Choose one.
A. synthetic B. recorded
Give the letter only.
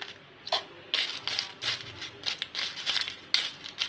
B